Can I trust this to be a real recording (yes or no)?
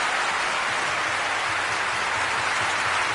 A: yes